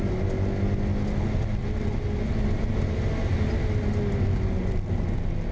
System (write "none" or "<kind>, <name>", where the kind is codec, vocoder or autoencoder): none